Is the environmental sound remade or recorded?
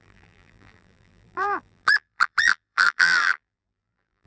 remade